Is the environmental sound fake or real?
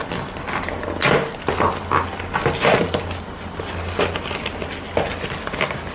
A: real